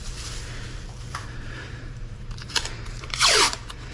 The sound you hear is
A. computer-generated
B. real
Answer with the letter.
A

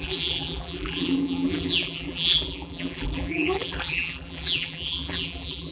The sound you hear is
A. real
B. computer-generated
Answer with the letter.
B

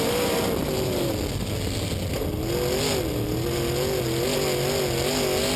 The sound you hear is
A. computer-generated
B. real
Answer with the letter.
B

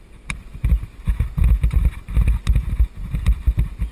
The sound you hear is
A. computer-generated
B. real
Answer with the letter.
B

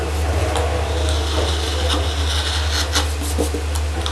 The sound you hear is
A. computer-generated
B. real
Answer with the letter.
B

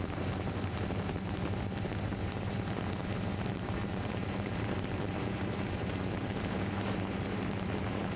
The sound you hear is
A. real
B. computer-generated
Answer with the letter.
B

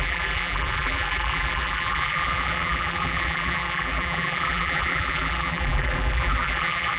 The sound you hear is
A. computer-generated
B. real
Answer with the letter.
A